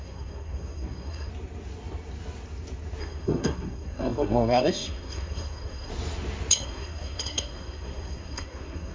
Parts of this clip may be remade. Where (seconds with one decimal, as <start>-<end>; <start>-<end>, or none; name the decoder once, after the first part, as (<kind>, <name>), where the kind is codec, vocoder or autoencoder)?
0.0-1.3 (codec, SNAC); 3.0-5.9; 6.5-8.9